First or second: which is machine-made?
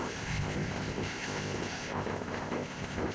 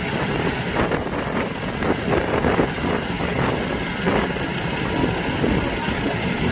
first